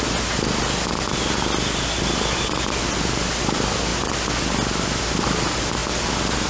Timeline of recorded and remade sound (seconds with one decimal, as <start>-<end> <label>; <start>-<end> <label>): 0.0-6.5 recorded